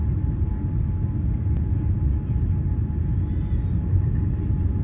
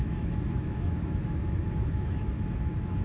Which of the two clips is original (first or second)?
first